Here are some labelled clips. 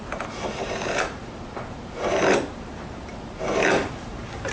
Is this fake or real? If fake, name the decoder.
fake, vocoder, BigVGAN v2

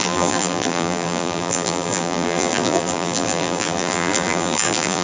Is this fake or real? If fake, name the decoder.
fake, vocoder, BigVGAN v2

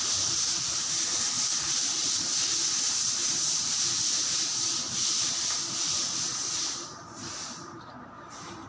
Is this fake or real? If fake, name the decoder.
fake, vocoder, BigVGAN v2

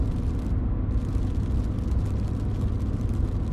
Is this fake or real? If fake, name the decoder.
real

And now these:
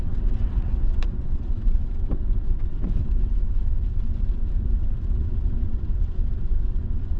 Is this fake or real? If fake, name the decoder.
fake, vocoder, WaveNeXt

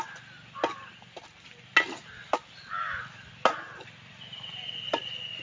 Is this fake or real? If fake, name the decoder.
real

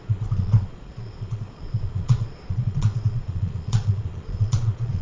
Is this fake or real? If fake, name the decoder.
fake, vocoder, Vocos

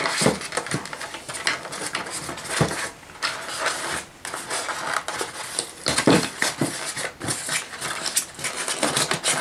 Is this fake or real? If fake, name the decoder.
real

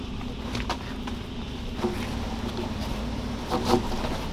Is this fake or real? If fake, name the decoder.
real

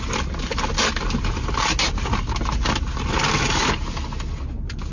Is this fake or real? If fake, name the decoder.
real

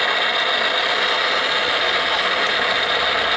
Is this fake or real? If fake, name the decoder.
real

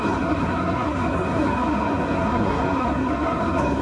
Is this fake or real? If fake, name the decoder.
fake, codec, SNAC